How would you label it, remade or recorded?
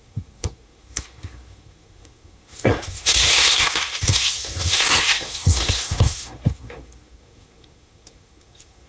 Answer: remade